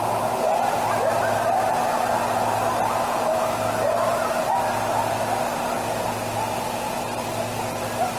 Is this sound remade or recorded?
recorded